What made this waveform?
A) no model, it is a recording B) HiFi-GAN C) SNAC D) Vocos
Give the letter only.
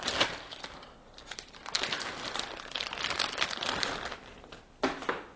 A